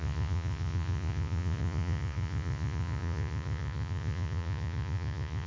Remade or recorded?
remade